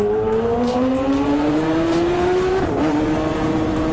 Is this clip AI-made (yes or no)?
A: yes